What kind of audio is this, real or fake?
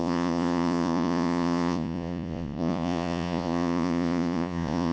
fake